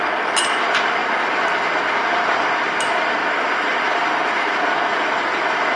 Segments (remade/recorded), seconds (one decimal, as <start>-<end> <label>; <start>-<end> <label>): 0.0-1.0 recorded; 1.0-1.7 remade; 1.7-3.2 recorded; 3.2-4.6 remade; 4.6-5.8 recorded